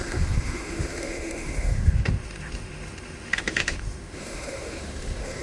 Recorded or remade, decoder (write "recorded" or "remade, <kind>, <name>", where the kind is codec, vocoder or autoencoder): remade, autoencoder, DAC-VAE